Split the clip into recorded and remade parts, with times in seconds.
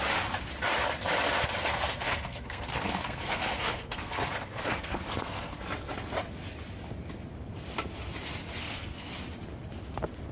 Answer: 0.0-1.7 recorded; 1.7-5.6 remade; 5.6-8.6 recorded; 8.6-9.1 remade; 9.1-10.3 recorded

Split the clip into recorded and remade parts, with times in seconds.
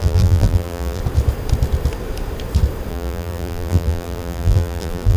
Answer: 0.0-1.0 remade; 1.0-2.9 recorded; 2.9-5.2 remade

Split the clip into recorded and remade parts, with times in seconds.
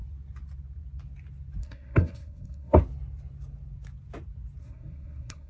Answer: 0.0-1.6 recorded; 1.6-2.8 remade; 2.8-4.6 recorded; 4.6-5.5 remade